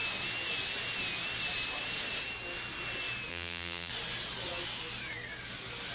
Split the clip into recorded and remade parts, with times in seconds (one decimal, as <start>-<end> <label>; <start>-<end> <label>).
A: 0.0-3.3 recorded; 3.3-3.9 remade; 3.9-5.9 recorded